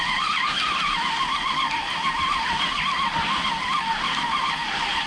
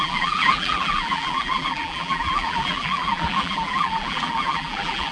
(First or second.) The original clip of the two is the first